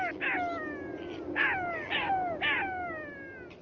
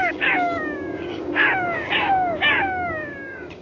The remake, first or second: second